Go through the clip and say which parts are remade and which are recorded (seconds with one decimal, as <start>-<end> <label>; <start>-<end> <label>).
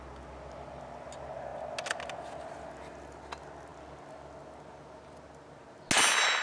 0.0-6.4 recorded